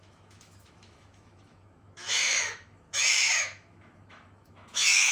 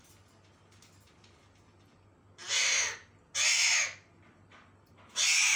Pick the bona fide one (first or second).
second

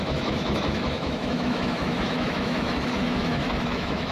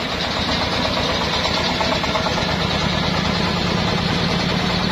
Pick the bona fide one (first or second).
second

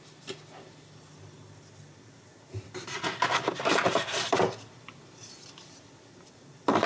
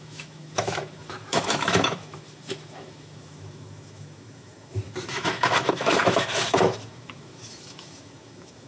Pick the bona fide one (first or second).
first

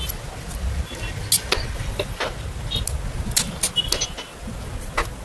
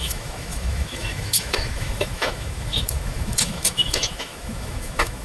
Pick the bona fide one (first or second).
first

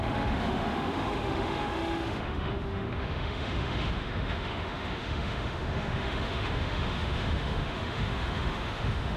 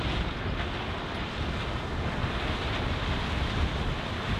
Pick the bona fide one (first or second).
second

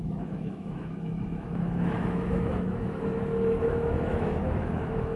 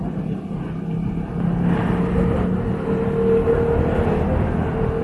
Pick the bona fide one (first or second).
second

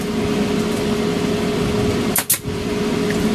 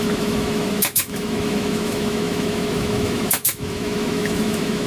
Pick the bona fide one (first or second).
first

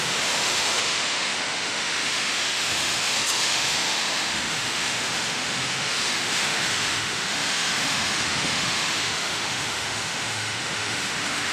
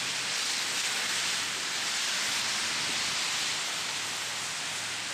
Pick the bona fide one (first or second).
second